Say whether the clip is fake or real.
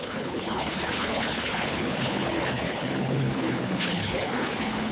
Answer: fake